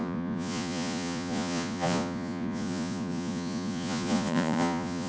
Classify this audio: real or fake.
fake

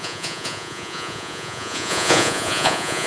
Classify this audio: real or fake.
fake